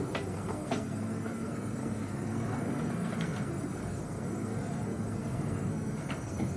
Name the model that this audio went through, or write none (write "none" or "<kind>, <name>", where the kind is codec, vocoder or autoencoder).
codec, SNAC